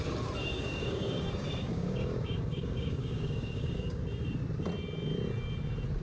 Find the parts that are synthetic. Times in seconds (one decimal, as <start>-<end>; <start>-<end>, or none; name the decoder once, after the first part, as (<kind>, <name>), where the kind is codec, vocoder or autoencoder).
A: 0.4-4.0 (codec, DAC)